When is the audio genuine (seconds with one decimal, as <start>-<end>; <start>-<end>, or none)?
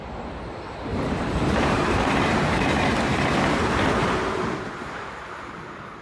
0.0-0.9; 2.7-4.0